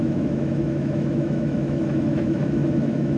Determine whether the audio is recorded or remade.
remade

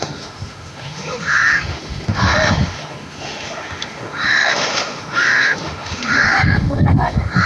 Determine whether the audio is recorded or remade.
remade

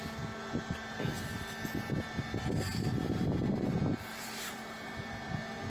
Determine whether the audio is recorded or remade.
recorded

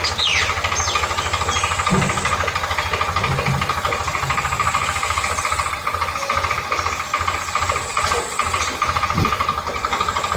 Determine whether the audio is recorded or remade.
recorded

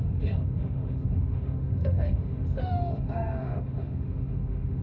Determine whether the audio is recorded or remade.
remade